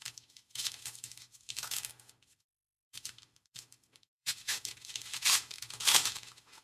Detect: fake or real fake